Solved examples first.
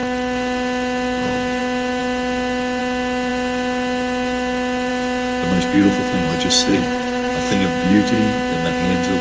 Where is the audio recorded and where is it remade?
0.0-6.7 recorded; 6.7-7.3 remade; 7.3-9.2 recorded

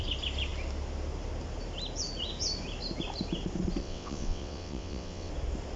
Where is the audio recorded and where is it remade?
0.0-3.8 recorded; 3.8-5.3 remade; 5.3-5.8 recorded

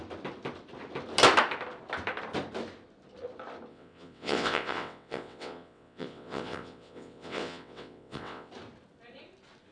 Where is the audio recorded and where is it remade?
0.0-3.7 recorded; 3.7-8.5 remade; 8.5-9.7 recorded

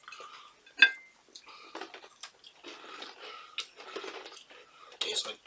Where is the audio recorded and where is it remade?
0.0-5.5 recorded